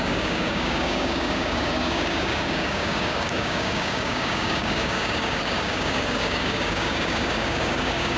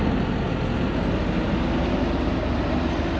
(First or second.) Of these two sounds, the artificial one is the first